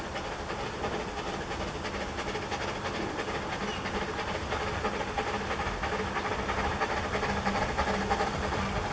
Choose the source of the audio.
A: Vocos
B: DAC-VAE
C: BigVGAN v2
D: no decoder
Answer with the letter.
D